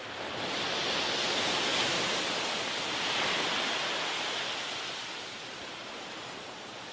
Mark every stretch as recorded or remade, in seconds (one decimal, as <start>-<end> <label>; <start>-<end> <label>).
0.0-6.9 recorded

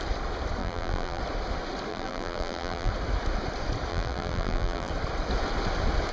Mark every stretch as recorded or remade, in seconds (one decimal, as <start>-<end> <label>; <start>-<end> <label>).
0.0-0.6 recorded; 0.6-1.2 remade; 1.2-1.9 recorded; 1.9-2.9 remade; 2.9-3.9 recorded; 3.9-4.9 remade; 4.9-6.1 recorded

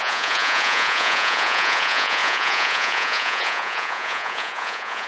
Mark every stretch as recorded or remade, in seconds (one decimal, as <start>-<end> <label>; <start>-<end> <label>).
0.0-5.1 remade